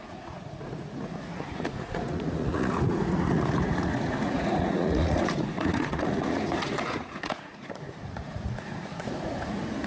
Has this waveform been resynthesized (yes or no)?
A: yes